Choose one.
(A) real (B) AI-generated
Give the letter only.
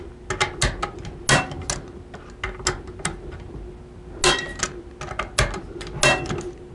A